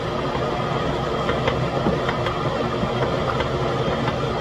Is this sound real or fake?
real